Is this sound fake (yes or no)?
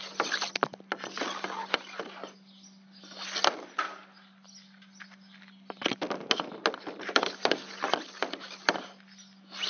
no